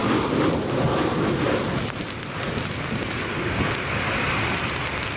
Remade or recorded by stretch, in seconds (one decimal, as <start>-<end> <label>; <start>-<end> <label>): 0.0-5.2 recorded